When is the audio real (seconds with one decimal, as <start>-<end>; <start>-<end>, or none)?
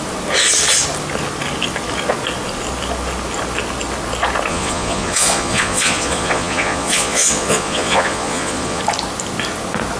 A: 0.0-4.5; 8.8-10.0